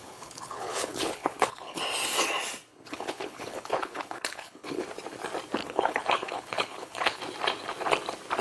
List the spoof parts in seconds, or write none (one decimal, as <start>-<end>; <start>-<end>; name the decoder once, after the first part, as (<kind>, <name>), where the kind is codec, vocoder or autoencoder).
0.0-1.8 (codec, HILCodec); 2.7-4.8; 5.6-7.2